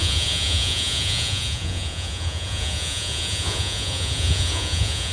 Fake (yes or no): yes